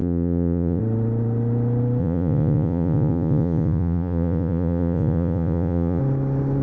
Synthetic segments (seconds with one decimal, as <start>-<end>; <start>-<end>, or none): 0.0-0.8; 2.0-6.0